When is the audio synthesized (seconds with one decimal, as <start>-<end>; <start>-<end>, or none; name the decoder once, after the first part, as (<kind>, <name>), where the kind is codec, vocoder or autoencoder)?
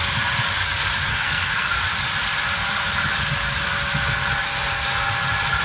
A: 1.1-1.7 (codec, SNAC)